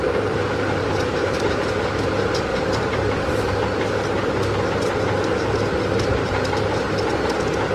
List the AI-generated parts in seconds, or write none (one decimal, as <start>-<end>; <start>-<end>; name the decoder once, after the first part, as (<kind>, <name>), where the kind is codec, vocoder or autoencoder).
0.8-1.5 (vocoder, BigVGAN v2); 2.5-3.5